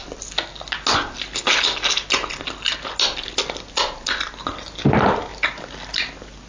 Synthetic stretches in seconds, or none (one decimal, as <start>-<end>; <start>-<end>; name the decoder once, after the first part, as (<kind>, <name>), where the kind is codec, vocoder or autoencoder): none